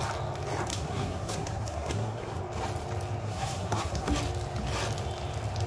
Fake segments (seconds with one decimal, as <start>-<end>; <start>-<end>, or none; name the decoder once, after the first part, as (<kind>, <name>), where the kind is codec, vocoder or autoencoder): 0.7-2.4 (codec, SNAC); 3.2-4.1